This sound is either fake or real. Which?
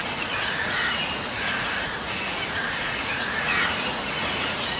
fake